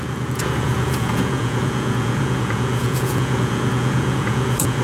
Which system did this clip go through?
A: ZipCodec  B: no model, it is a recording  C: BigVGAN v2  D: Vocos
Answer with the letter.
D